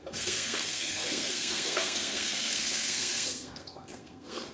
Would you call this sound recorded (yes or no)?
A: no